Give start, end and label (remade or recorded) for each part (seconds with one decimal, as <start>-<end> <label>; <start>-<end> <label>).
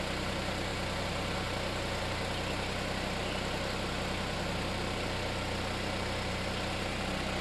0.0-7.4 recorded